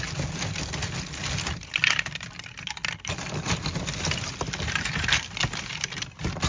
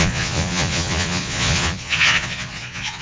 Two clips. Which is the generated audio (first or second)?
second